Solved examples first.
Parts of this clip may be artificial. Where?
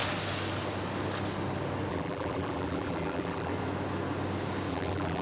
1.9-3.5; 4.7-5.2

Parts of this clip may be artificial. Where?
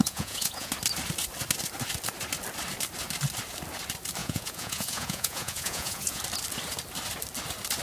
0.0-0.7; 4.2-6.2